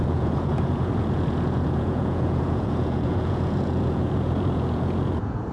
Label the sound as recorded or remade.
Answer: remade